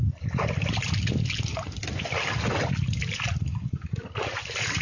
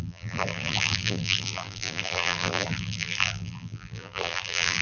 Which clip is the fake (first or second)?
second